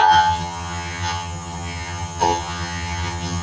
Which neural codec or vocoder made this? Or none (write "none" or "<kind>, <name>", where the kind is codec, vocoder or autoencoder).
vocoder, HiFi-GAN